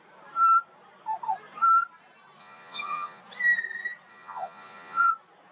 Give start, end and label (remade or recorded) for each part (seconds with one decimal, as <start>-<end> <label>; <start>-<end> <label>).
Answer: 0.0-2.4 recorded; 2.4-3.2 remade; 3.2-4.1 recorded; 4.1-5.1 remade; 5.1-5.5 recorded